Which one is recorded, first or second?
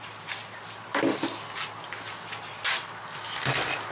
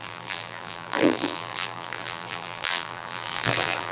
first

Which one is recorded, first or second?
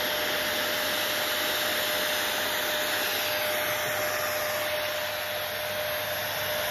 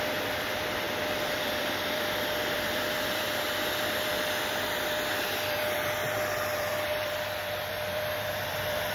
first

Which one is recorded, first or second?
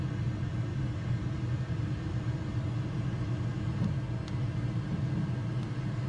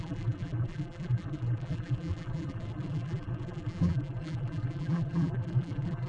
first